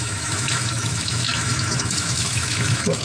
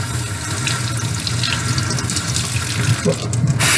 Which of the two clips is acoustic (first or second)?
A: second